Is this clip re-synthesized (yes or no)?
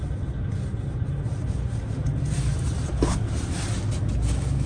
no